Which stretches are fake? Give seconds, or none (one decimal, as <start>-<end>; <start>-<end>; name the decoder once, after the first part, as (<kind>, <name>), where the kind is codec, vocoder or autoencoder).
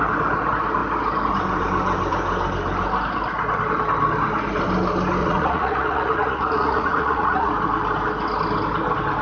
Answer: 5.2-7.5 (vocoder, Vocos)